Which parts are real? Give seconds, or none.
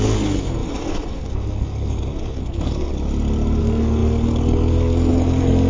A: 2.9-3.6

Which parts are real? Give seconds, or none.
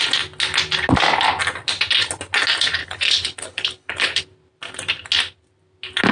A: 0.0-2.8; 4.2-6.1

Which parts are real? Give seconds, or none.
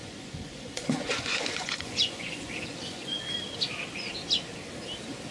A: 3.2-5.3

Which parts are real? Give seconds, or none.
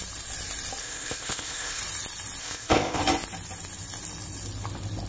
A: 0.0-0.8; 1.8-2.4; 3.0-5.1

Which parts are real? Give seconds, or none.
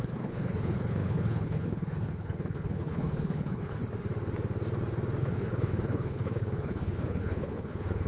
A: 3.8-5.2